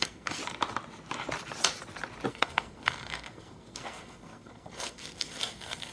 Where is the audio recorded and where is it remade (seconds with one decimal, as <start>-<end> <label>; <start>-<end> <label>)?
0.0-0.4 remade; 0.4-2.3 recorded; 2.3-5.9 remade